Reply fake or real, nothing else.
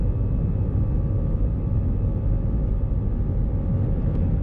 real